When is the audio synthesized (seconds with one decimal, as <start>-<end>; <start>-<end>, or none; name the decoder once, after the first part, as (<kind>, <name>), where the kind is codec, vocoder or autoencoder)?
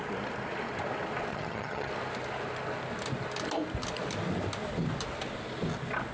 1.3-1.9 (vocoder, HiFi-GAN)